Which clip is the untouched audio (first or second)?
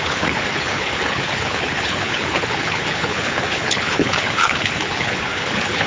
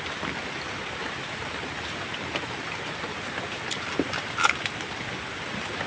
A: second